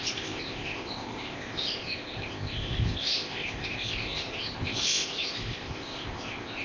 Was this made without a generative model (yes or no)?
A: no